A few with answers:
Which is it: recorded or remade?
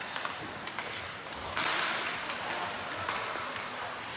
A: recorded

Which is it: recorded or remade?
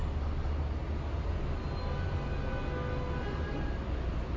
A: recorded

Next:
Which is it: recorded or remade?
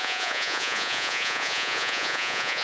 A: remade